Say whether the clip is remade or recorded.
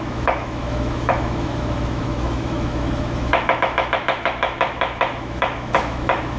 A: remade